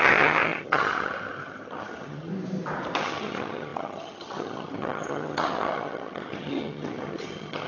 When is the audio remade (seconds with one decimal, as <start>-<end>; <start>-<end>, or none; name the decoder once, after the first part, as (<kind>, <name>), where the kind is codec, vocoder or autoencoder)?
0.0-2.3 (vocoder, HiFi-GAN); 3.0-7.7